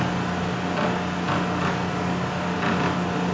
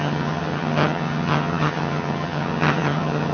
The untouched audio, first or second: first